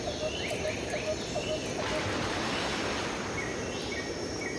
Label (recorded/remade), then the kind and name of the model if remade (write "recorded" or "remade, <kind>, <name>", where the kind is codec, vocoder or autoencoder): recorded